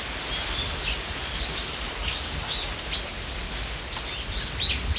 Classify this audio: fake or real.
real